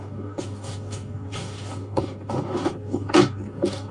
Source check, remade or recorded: remade